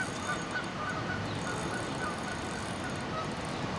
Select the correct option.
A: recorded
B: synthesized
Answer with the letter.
A